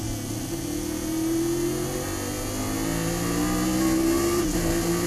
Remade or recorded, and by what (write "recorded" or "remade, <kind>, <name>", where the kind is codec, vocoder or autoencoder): recorded